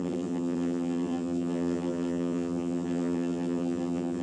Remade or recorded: remade